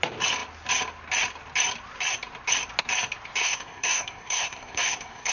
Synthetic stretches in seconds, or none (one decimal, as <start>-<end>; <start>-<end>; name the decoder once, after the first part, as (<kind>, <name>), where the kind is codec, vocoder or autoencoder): 3.4-5.3 (codec, SNAC)